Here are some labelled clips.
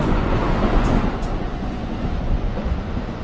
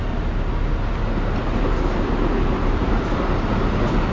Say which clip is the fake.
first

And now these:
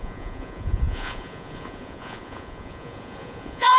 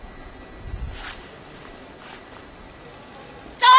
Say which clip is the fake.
first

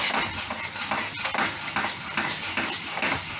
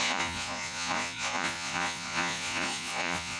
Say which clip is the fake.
second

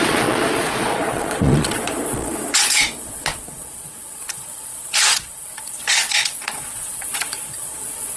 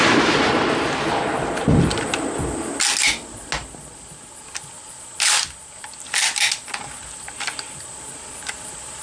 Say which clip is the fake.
first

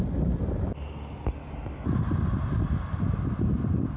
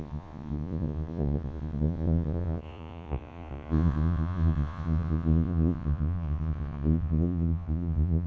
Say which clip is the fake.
second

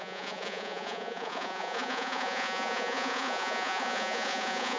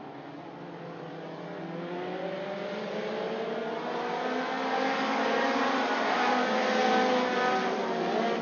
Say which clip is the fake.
first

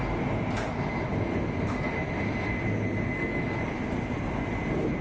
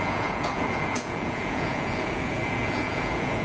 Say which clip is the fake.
second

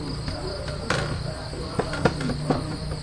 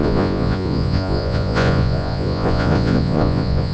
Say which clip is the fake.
second